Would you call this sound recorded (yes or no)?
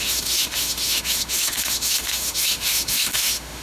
no